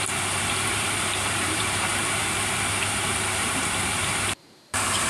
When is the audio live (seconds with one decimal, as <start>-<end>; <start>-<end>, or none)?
2.2-2.8